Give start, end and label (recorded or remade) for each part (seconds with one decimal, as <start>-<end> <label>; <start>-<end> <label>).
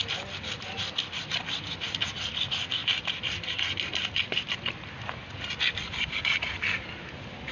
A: 0.0-7.5 recorded